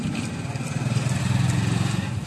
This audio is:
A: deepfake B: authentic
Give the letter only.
B